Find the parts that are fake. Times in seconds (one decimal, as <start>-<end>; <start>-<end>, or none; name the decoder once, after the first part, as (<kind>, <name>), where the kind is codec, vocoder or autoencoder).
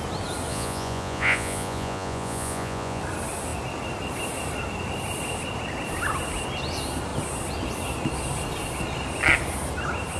0.5-3.0 (vocoder, Vocos)